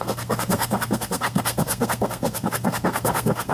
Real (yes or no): no